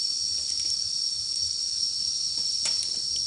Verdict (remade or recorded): remade